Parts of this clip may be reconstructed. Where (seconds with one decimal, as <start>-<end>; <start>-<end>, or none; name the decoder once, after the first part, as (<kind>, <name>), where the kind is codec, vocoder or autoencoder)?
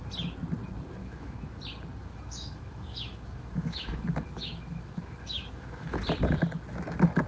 1.0-1.6 (autoencoder, DAC-VAE); 2.0-6.0